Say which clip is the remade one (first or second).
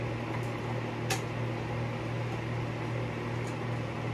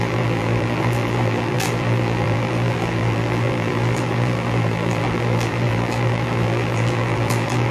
second